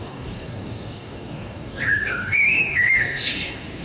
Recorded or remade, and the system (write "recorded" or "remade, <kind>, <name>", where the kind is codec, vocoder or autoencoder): remade, codec, DAC